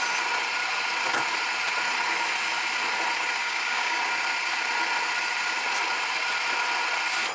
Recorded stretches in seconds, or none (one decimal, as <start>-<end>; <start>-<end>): 0.0-3.4; 4.0-7.3

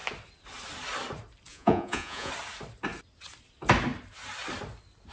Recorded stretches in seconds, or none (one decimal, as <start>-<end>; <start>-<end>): 0.0-1.5; 2.3-5.1

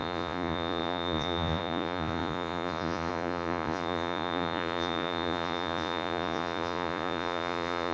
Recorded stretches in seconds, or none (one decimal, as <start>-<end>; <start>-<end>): none

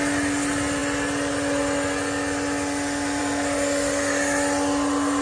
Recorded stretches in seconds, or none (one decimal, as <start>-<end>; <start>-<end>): 0.0-5.2